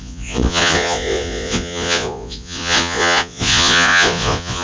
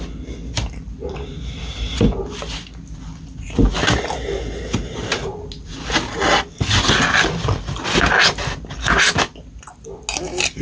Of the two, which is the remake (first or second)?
first